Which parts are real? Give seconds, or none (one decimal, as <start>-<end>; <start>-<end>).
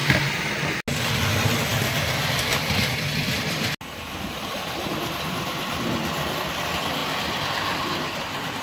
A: 0.0-8.6